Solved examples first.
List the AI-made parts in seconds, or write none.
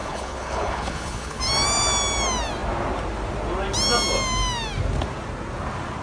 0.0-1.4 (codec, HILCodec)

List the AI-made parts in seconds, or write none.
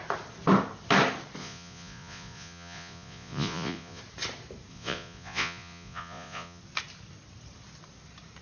1.4-4.0 (vocoder, Vocos); 4.7-6.6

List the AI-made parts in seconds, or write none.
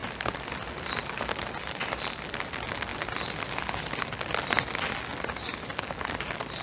none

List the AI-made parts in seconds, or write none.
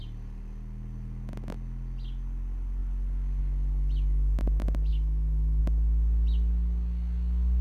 4.9-5.6 (autoencoder, DAC-VAE)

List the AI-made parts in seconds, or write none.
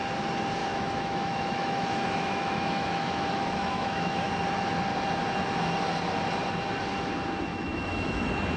0.6-4.3 (autoencoder, DAC-VAE); 7.5-8.2